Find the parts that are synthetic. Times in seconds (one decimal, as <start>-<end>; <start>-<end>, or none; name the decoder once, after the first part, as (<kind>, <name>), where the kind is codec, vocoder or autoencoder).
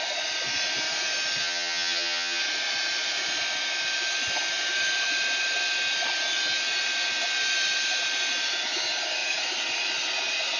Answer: 1.4-2.4 (vocoder, HiFi-GAN)